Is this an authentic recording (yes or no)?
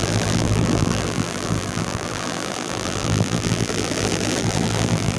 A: no